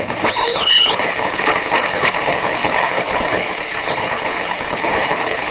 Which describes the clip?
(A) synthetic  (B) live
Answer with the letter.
A